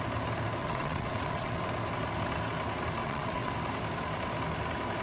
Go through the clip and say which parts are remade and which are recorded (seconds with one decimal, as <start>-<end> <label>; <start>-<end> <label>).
0.0-0.6 recorded; 0.6-1.6 remade; 1.6-3.0 recorded; 3.0-3.5 remade; 3.5-5.0 recorded